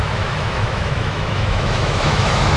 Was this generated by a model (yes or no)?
yes